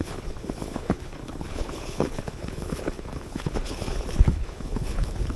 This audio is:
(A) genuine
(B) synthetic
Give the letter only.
B